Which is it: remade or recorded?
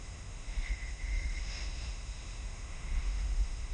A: remade